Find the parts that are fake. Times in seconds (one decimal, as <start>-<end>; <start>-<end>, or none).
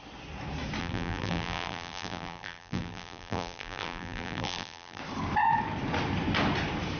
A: 0.8-5.0